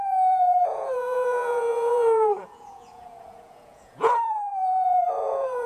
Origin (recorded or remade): remade